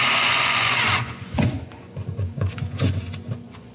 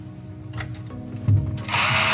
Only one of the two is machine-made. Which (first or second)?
first